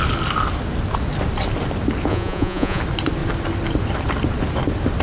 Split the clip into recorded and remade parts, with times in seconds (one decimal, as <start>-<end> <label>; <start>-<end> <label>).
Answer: 0.0-2.1 recorded; 2.1-2.8 remade; 2.8-5.0 recorded